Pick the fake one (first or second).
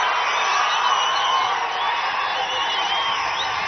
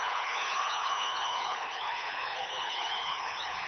second